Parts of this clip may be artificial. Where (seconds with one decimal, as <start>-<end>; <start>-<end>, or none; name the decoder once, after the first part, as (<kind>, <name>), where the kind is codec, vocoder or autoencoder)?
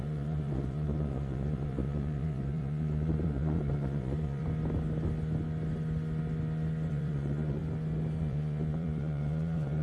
0.0-4.4 (vocoder, Vocos); 6.9-7.6; 8.2-9.8